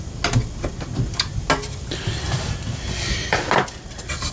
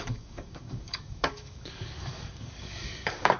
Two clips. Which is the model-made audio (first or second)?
second